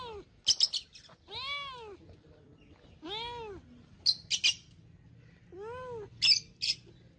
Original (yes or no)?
yes